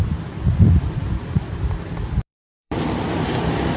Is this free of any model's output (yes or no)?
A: no